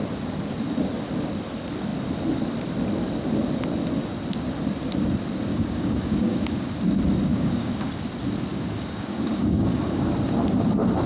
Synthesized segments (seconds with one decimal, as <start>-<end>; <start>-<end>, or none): 5.5-6.7; 7.3-7.9; 8.5-10.1